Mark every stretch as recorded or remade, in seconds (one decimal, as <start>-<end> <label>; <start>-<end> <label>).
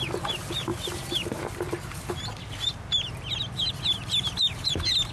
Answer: 0.0-5.1 recorded